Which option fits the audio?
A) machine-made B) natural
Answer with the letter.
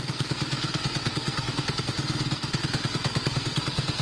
A